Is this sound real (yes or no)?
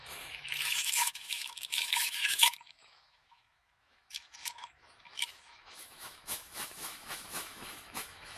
no